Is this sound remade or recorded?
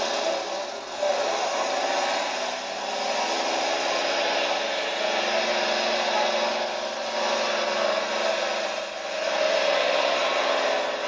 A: recorded